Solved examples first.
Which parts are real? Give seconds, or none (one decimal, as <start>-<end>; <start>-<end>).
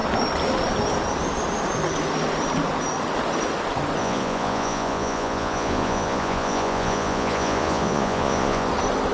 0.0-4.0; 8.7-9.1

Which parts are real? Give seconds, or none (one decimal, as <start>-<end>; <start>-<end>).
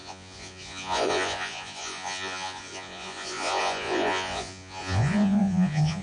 none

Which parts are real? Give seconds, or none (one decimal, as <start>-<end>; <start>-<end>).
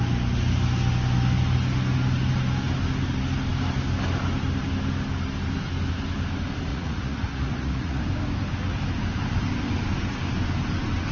0.0-6.7; 8.0-11.1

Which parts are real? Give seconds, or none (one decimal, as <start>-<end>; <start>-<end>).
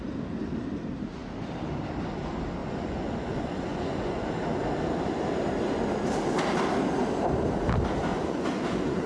0.0-2.6; 4.3-8.1